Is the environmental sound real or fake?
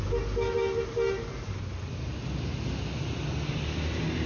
real